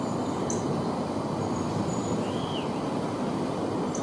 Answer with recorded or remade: recorded